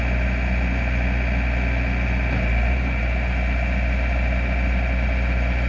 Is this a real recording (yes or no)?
yes